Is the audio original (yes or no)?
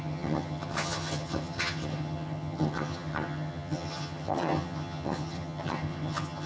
no